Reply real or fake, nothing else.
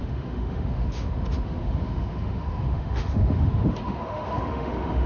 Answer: fake